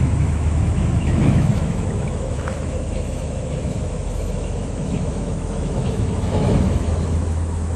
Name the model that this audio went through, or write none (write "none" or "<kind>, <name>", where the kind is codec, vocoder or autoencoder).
autoencoder, DAC-VAE